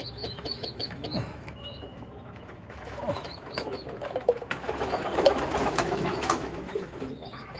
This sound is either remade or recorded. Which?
remade